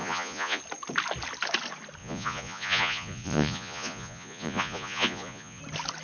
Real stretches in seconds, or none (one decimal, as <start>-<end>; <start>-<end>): 0.6-2.0; 5.6-6.0